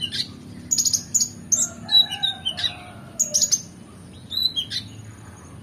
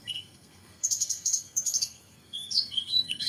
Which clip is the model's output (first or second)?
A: second